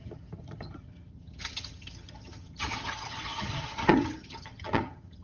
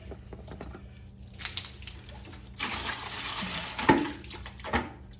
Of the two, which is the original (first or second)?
second